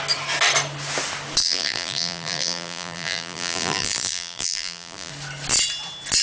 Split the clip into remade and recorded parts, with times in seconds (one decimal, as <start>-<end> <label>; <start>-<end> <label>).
0.0-1.4 recorded; 1.4-5.1 remade; 5.1-6.2 recorded